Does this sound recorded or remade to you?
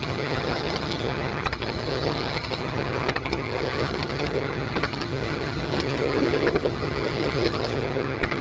remade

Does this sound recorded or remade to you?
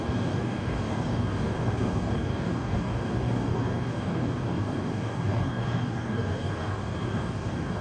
remade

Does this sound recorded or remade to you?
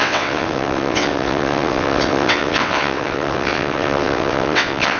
remade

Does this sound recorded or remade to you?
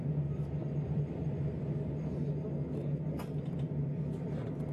recorded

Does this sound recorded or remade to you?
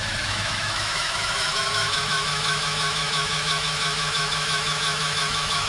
remade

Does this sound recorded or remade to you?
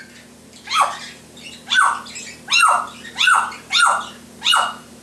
recorded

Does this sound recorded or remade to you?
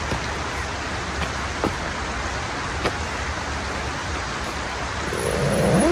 recorded